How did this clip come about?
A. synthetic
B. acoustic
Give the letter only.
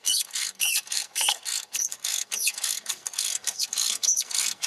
A